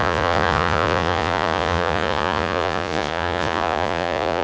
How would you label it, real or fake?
fake